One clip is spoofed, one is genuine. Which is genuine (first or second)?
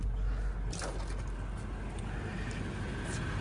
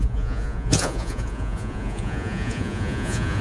first